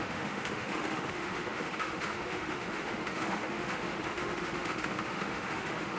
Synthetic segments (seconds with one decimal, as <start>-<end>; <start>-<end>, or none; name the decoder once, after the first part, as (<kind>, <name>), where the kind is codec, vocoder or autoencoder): 0.0-6.0 (autoencoder, DAC-VAE)